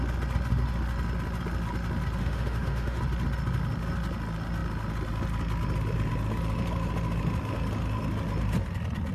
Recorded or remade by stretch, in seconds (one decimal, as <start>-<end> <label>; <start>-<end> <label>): 0.0-2.2 recorded; 2.2-3.0 remade; 3.0-9.1 recorded